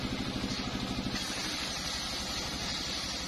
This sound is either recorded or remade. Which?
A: recorded